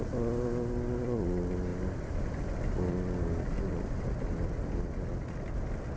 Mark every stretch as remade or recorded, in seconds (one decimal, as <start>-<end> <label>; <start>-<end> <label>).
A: 0.0-6.0 recorded